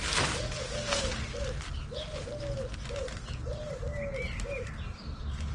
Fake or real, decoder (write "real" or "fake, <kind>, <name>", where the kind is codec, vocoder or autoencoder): real